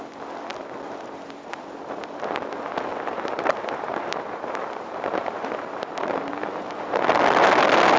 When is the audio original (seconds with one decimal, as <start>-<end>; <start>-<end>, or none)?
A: 0.0-2.9; 6.8-8.0